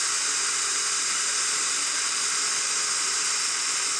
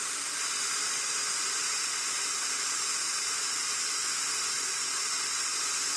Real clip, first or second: first